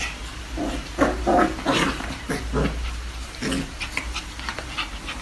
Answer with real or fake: real